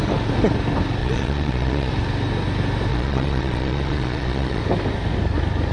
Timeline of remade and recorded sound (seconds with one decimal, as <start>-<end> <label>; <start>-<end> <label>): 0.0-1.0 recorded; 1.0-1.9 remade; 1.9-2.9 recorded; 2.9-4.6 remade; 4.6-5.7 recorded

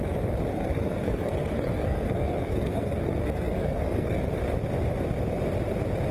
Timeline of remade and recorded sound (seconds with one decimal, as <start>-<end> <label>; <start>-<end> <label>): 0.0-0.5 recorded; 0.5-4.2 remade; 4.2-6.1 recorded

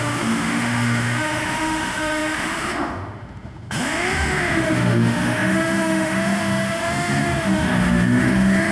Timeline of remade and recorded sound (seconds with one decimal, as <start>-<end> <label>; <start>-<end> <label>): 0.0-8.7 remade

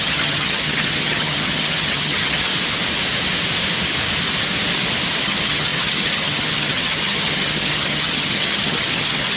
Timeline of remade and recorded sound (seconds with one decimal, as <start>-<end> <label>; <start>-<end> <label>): 0.0-2.5 remade; 2.5-5.2 recorded; 5.2-9.4 remade